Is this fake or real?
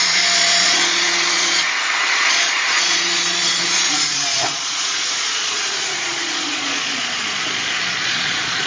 fake